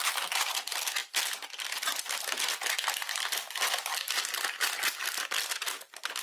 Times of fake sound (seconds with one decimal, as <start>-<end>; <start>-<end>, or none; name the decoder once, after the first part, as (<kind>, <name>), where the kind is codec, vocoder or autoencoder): none